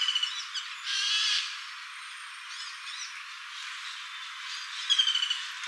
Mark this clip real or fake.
real